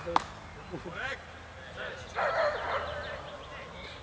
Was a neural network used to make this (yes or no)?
no